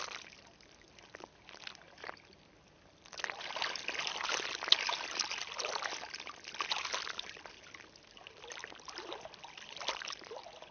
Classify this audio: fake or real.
real